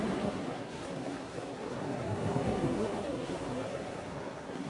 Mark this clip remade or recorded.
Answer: remade